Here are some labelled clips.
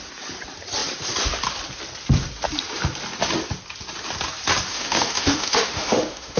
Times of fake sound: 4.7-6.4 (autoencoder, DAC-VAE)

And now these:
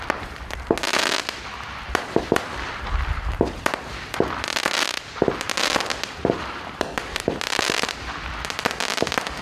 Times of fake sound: 4.9-7.3 (vocoder, BigVGAN v2)

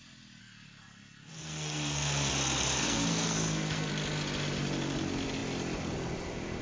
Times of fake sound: 0.4-2.3 (codec, SNAC); 2.8-3.9

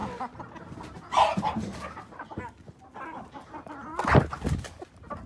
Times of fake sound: none

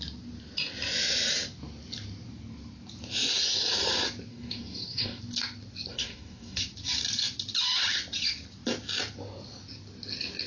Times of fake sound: 4.3-5.2 (codec, DAC); 5.9-6.6

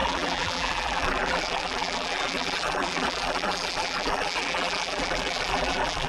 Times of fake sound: 0.0-6.1 (vocoder, BigVGAN v2)

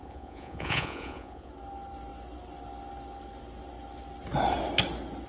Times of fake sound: 0.0-1.5 (vocoder, Vocos)